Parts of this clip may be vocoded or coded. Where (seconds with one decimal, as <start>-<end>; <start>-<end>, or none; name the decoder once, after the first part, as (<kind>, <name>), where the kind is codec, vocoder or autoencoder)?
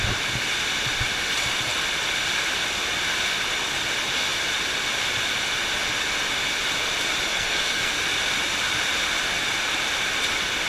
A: 7.3-7.9 (codec, SNAC)